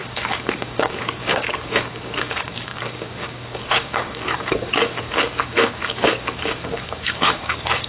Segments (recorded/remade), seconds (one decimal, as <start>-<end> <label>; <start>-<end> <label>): 0.0-7.9 remade